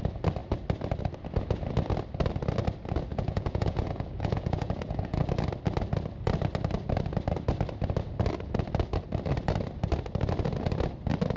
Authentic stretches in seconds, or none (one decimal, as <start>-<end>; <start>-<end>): 0.0-3.1; 5.2-11.4